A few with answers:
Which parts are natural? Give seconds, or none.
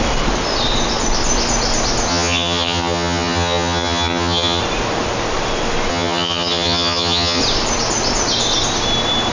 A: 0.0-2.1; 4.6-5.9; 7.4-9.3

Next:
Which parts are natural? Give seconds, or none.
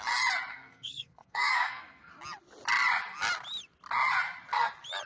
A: 0.0-0.5; 2.1-5.1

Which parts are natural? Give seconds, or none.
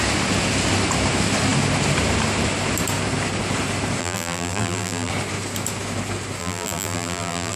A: 0.0-4.0; 5.1-6.4